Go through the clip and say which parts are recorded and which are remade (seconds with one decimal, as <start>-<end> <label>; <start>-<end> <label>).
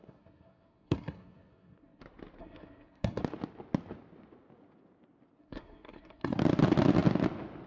0.0-2.0 remade; 2.0-2.4 recorded; 2.4-3.2 remade; 3.2-5.4 recorded; 5.4-6.4 remade; 6.4-7.7 recorded